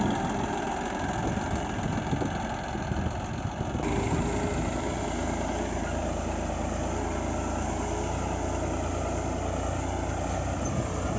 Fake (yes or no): no